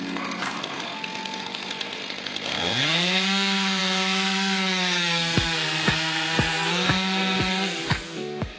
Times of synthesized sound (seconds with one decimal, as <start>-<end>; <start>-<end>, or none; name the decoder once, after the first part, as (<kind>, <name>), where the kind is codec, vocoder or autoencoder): 0.0-8.6 (codec, SNAC)